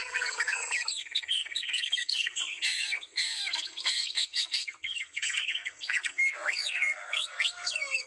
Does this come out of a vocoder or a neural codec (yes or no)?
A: yes